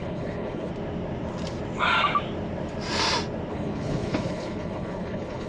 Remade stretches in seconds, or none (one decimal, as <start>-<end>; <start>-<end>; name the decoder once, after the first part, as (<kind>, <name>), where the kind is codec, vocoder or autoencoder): 0.0-0.7 (codec, HILCodec); 3.5-5.5